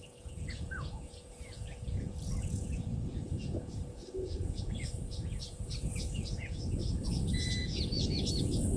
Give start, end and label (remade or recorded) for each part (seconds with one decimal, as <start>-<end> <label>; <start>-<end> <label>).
0.0-8.8 remade